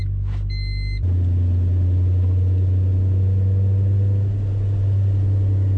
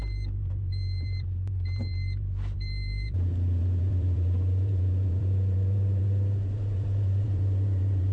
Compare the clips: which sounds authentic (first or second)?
first